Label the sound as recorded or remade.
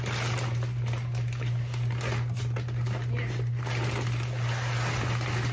recorded